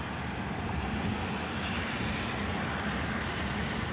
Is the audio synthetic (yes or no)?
no